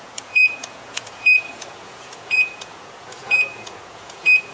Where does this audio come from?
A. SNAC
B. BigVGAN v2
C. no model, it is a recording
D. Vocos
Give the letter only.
D